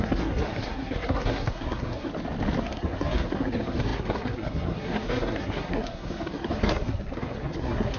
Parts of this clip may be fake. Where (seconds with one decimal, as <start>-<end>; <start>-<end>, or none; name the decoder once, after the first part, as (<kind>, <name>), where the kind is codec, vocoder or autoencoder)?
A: 0.0-2.1 (codec, SNAC); 2.6-8.0